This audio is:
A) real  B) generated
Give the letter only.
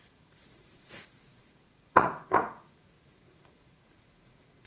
B